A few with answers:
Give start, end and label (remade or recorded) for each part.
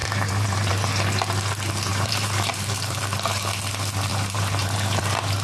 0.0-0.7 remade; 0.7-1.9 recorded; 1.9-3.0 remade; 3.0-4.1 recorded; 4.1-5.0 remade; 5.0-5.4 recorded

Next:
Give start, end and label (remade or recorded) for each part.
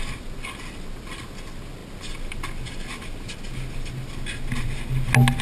0.0-5.4 recorded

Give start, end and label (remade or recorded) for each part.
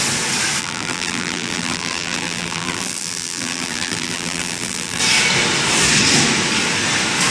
0.0-0.6 recorded; 0.6-5.0 remade; 5.0-7.3 recorded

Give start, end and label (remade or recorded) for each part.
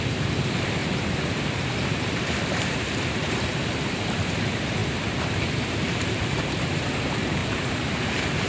0.0-8.5 remade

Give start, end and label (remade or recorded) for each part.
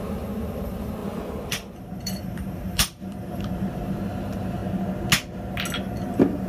0.0-4.6 remade; 4.6-6.1 recorded; 6.1-6.5 remade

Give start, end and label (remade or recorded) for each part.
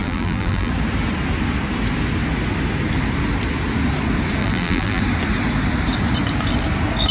0.0-0.7 remade; 0.7-4.4 recorded; 4.4-5.0 remade; 5.0-7.1 recorded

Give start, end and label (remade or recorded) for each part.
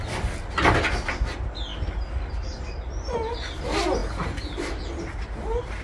0.0-5.8 recorded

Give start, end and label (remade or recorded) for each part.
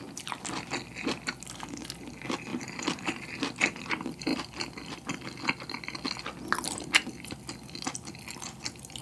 0.0-2.5 recorded; 2.5-3.8 remade; 3.8-9.0 recorded